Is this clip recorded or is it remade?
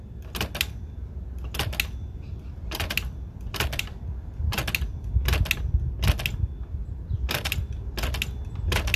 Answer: recorded